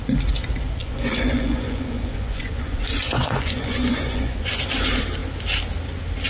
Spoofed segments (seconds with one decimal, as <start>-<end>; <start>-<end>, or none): 0.8-4.6